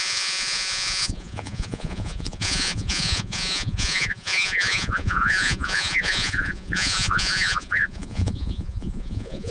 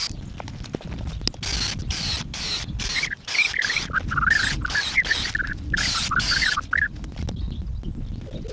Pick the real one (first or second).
second